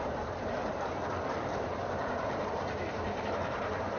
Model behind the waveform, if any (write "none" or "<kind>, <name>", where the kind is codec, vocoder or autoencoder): vocoder, BigVGAN v2